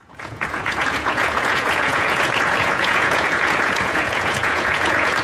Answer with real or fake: fake